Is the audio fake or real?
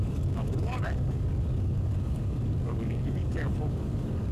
fake